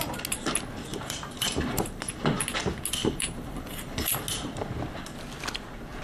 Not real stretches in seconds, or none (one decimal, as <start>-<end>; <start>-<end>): 0.9-2.2; 3.0-4.2